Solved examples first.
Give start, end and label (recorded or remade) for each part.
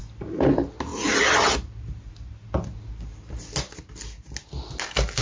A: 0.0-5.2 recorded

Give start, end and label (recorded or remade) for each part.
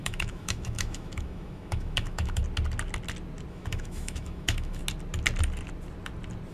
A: 0.0-2.4 remade; 2.4-3.5 recorded; 3.5-4.8 remade; 4.8-6.5 recorded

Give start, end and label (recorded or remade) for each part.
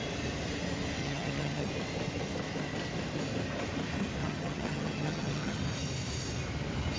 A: 0.0-1.0 recorded; 1.0-1.7 remade; 1.7-4.2 recorded; 4.2-5.6 remade; 5.6-7.0 recorded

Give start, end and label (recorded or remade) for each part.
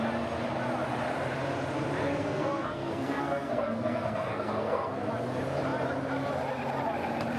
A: 0.0-2.0 recorded; 2.0-5.1 remade; 5.1-7.4 recorded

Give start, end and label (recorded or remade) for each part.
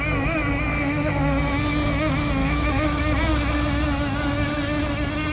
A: 0.0-0.7 recorded; 0.7-1.2 remade; 1.2-2.4 recorded; 2.4-3.0 remade; 3.0-5.3 recorded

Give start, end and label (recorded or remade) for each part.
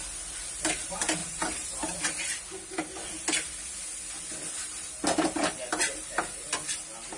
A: 0.0-1.2 recorded; 1.2-2.0 remade; 2.0-4.6 recorded; 4.6-5.4 remade; 5.4-7.2 recorded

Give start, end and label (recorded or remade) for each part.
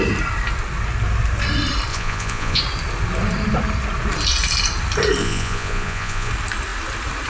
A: 0.0-1.9 recorded; 1.9-2.6 remade; 2.6-5.2 recorded; 5.2-6.3 remade; 6.3-7.3 recorded